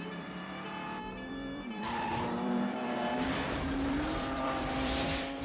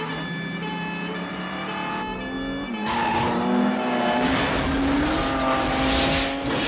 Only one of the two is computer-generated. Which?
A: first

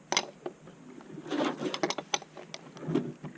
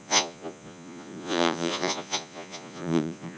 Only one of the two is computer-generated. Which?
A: second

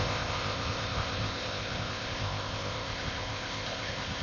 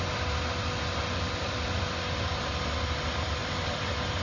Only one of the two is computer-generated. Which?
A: first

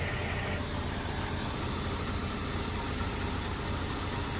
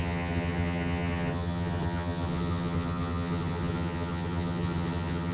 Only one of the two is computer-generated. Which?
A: second